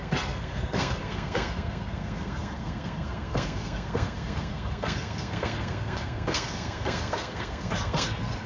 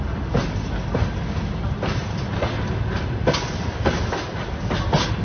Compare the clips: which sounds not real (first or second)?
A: first